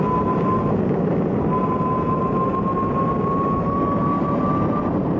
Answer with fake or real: real